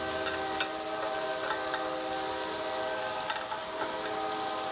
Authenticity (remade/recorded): recorded